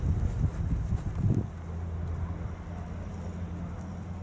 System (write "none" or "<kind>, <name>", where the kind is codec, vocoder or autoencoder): none